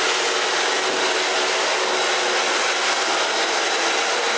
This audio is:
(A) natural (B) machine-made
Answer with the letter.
A